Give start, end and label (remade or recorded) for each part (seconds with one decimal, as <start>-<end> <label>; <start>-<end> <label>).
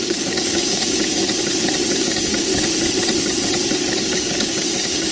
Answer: 0.0-1.2 remade; 1.2-2.0 recorded; 2.0-2.5 remade; 2.5-4.0 recorded; 4.0-5.1 remade